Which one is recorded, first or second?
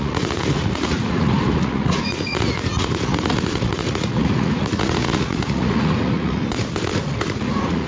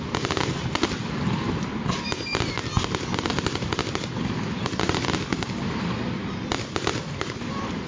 second